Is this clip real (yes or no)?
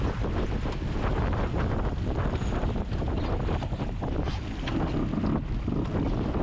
yes